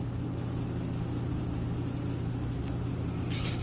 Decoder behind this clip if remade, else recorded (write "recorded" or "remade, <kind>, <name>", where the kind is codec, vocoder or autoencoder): recorded